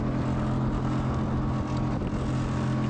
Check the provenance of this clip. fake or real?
real